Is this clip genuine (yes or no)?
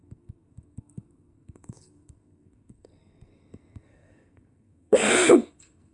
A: no